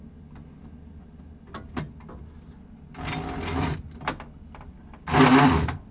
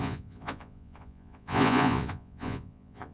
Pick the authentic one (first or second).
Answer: first